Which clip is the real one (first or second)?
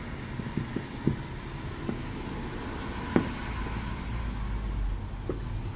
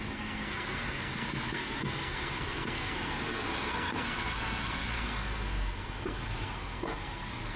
first